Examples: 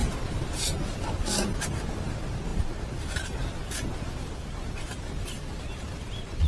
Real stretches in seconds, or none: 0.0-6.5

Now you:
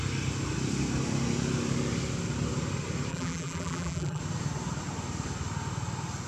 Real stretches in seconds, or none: 0.0-3.1; 4.2-6.3